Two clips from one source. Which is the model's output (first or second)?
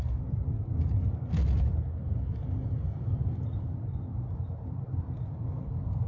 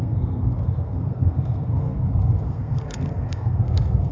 second